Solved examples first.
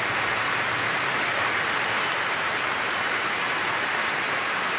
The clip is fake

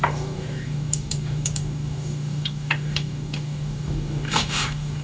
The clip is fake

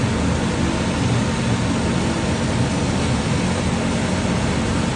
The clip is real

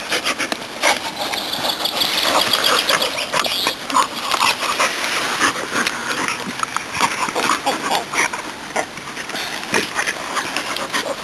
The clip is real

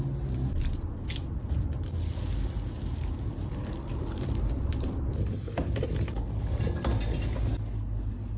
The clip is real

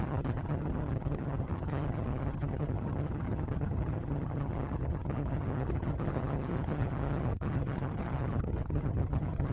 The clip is fake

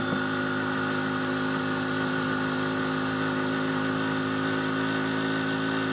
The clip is real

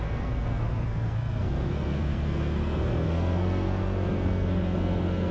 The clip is fake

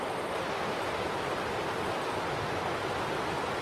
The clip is real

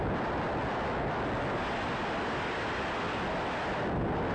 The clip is real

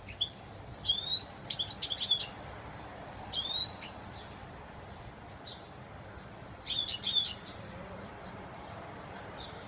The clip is fake